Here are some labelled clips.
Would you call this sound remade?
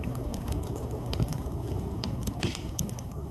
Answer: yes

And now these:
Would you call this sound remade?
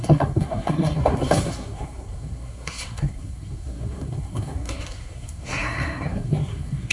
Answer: yes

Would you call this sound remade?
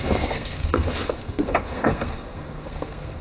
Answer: yes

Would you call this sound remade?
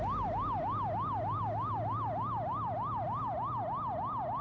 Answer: no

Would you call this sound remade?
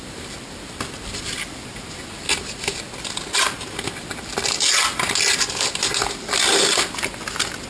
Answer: no